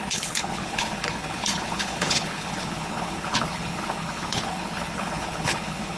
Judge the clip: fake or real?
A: fake